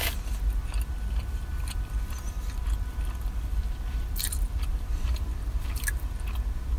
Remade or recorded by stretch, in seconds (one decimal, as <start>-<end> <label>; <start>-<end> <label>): 0.0-4.7 recorded; 4.7-5.3 remade; 5.3-6.8 recorded